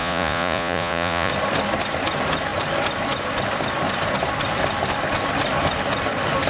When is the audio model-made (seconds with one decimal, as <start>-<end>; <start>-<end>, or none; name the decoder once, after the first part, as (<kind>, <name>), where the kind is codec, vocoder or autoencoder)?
0.0-1.3 (vocoder, Vocos)